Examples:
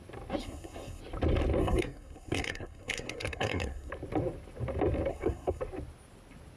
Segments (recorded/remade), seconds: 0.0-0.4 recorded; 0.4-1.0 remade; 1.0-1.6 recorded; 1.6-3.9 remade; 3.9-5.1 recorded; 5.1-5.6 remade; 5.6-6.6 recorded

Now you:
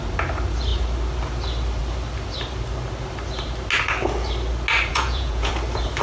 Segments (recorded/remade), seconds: 0.0-4.9 recorded; 4.9-5.5 remade; 5.5-6.0 recorded

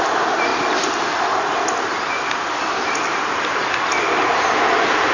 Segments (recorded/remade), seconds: 0.0-0.5 recorded; 0.5-2.8 remade; 2.8-5.1 recorded

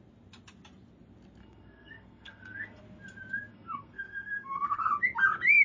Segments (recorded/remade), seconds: 0.0-1.4 recorded; 1.4-2.8 remade; 2.8-3.5 recorded; 3.5-4.9 remade; 4.9-5.6 recorded

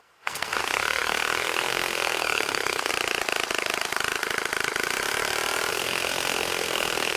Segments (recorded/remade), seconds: 0.0-2.9 remade; 2.9-5.7 recorded; 5.7-7.2 remade

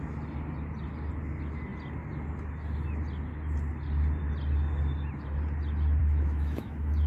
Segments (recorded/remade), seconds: 0.0-6.0 recorded; 6.0-7.1 remade

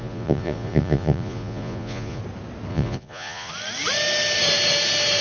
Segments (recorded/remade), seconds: 0.0-2.2 remade; 2.2-2.7 recorded; 2.7-3.5 remade; 3.5-5.2 recorded

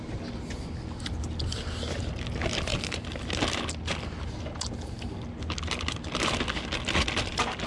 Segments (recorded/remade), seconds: 0.0-7.7 recorded